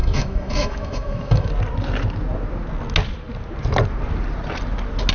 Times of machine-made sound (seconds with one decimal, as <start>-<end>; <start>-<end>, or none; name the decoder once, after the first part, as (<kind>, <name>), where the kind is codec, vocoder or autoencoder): 0.0-1.5 (autoencoder, DAC-VAE)